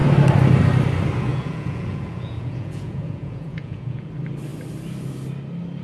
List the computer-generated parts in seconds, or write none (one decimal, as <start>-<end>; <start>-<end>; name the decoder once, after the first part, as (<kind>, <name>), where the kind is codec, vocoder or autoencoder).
1.3-4.1 (vocoder, Vocos)